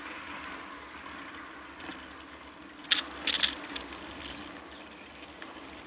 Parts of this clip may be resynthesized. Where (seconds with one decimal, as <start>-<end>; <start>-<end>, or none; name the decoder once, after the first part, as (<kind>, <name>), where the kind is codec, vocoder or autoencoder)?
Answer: none